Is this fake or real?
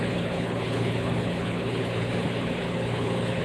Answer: fake